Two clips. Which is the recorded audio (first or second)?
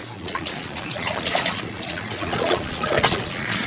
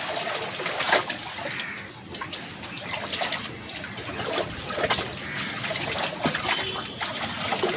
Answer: second